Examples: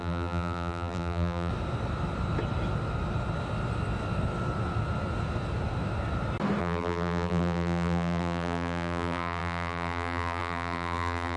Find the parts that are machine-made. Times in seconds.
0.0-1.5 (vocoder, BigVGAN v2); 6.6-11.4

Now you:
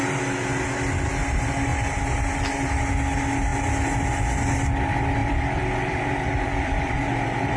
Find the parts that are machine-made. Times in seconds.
5.2-7.6 (vocoder, BigVGAN v2)

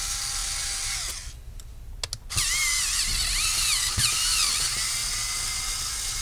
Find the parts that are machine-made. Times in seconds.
none

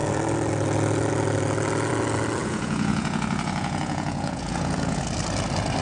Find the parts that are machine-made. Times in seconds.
2.4-5.0 (vocoder, Vocos)

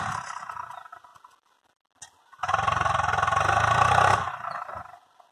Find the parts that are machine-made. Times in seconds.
none